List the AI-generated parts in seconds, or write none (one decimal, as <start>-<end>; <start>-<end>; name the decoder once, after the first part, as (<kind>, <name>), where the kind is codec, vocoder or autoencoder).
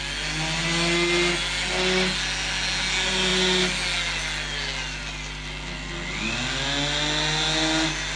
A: none